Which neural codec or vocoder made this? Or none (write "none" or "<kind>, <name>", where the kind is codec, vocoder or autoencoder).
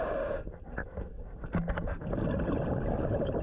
none